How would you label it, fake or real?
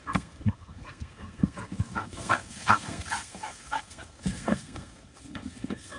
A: fake